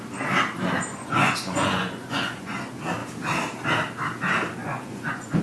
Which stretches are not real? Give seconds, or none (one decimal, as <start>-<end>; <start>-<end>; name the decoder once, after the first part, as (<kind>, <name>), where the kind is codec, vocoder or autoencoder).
0.9-2.6 (vocoder, Vocos); 4.6-5.4

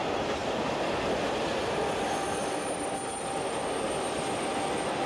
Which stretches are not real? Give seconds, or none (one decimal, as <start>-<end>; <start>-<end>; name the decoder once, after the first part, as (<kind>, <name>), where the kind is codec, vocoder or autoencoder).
none

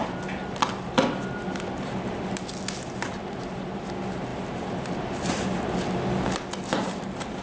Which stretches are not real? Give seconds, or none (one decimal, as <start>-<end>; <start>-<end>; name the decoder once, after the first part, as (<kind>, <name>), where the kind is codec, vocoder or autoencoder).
none

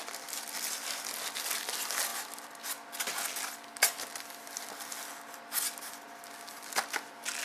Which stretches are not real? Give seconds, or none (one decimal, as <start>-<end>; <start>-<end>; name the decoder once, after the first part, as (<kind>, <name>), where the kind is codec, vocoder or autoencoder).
none

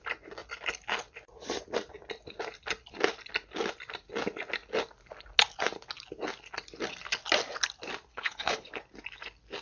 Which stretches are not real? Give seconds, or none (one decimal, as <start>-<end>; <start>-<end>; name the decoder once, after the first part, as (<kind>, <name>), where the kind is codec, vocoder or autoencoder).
8.1-8.8 (codec, HILCodec)

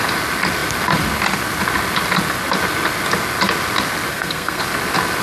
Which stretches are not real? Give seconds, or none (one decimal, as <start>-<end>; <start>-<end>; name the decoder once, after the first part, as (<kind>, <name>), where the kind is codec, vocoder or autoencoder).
4.1-4.6 (codec, SNAC)

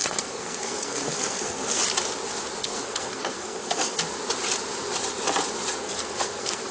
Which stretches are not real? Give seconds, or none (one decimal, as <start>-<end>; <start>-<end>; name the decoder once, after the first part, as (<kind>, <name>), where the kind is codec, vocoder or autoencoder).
0.0-1.8 (codec, SNAC); 2.6-4.0; 5.8-6.7

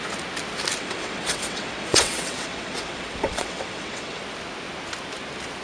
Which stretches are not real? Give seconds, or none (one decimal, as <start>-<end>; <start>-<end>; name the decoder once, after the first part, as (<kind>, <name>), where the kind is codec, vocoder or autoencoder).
0.8-4.2 (vocoder, WaveNeXt)